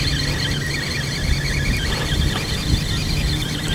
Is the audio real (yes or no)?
yes